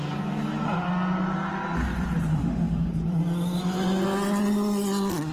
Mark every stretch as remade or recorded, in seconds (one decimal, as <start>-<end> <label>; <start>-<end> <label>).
0.0-2.3 recorded; 2.3-2.9 remade; 2.9-5.3 recorded